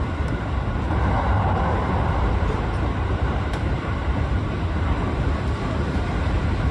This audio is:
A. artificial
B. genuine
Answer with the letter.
A